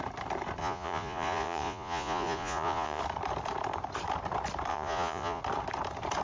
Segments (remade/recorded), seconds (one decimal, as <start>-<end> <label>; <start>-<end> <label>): 0.0-0.6 recorded; 0.6-3.0 remade; 3.0-4.7 recorded; 4.7-5.4 remade; 5.4-6.2 recorded